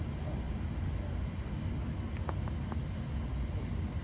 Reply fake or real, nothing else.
real